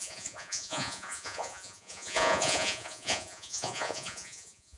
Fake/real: fake